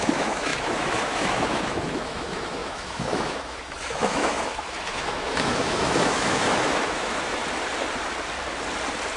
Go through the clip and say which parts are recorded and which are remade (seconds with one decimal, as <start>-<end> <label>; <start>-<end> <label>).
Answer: 0.0-7.4 remade; 7.4-9.2 recorded